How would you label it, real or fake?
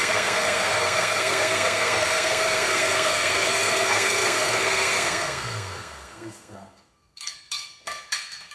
fake